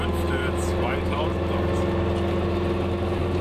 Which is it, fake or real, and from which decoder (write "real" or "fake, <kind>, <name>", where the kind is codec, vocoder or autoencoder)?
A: real